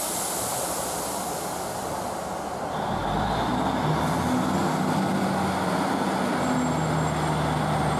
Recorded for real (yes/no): yes